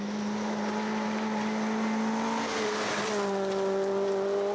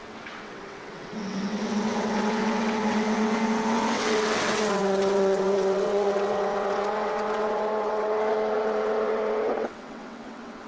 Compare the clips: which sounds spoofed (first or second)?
second